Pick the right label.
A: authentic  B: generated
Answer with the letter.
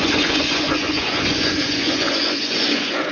B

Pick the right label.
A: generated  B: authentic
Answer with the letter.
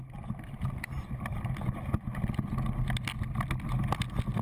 B